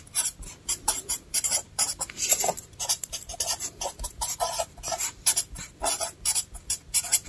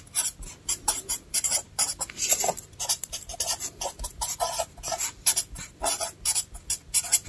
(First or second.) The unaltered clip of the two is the second